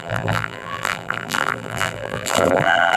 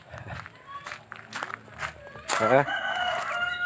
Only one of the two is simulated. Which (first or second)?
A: first